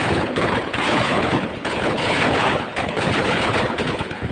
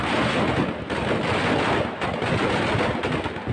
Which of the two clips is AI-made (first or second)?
first